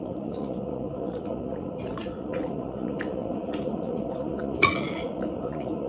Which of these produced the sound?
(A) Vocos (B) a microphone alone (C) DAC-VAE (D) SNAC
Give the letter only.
A